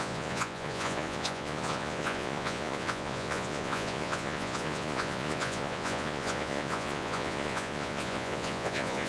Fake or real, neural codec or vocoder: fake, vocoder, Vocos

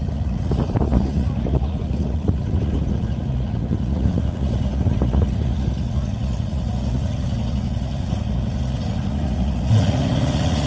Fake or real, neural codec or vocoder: fake, vocoder, Vocos